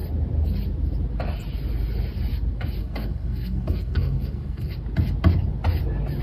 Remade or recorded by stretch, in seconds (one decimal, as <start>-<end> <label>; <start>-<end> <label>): 0.0-2.8 recorded; 2.8-4.7 remade; 4.7-6.2 recorded